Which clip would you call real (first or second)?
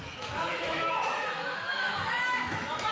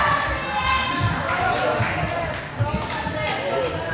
second